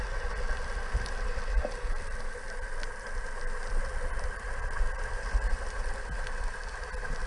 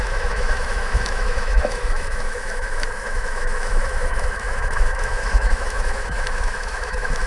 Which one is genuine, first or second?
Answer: first